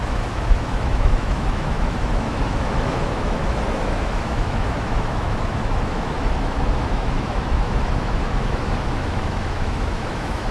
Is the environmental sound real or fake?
fake